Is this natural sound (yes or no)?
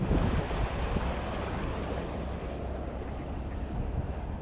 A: yes